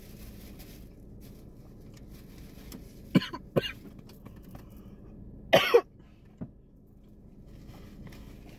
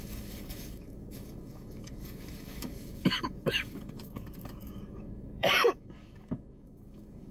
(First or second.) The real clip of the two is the first